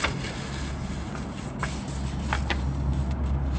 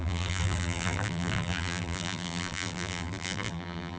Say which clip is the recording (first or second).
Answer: first